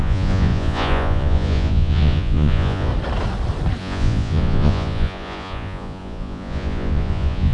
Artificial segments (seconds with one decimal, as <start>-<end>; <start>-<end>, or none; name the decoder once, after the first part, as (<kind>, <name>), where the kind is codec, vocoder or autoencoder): 0.0-2.9 (vocoder, Vocos); 3.8-7.5